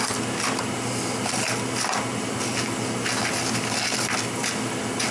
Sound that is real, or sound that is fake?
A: real